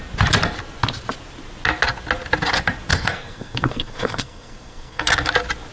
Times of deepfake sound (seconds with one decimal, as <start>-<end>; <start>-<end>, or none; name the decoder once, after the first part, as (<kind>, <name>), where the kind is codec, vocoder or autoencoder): 2.9-5.3 (codec, SNAC)